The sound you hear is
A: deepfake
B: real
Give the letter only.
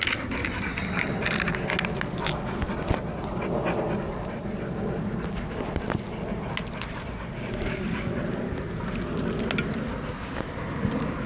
B